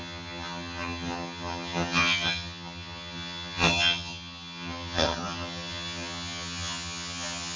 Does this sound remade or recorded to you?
remade